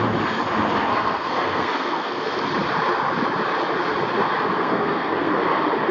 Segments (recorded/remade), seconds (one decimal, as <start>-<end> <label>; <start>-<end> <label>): 0.0-0.9 recorded; 0.9-2.4 remade; 2.4-4.5 recorded; 4.5-5.3 remade; 5.3-5.9 recorded